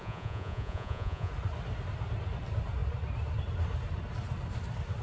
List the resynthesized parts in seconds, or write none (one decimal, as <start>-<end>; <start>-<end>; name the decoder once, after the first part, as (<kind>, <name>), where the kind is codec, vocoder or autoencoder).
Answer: 0.0-1.3 (vocoder, Vocos)